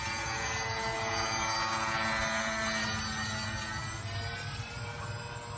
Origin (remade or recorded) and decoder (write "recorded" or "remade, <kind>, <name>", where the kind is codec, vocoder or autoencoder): recorded